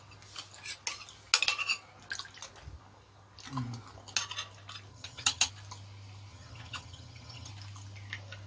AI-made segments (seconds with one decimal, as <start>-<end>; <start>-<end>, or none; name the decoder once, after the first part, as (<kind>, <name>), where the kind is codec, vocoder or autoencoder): 4.9-5.5 (vocoder, HiFi-GAN); 6.3-7.5